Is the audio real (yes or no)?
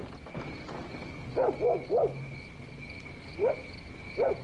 yes